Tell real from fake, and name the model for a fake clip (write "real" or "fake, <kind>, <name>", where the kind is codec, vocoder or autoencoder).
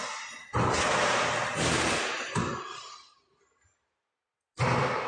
real